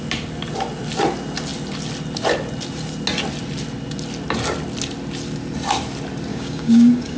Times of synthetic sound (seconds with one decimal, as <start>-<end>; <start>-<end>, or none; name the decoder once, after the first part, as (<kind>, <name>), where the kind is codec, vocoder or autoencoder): 6.3-7.2 (codec, DAC)